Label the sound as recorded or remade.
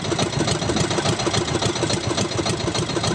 recorded